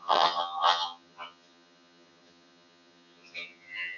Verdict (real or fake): fake